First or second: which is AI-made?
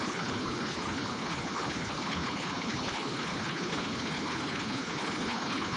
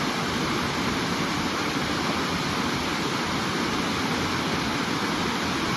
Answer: first